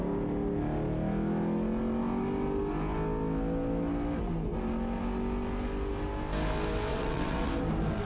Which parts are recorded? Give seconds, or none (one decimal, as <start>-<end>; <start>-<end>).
0.0-6.9; 7.5-8.1